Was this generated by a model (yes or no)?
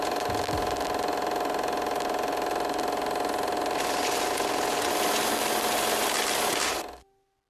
no